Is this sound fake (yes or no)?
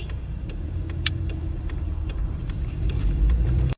yes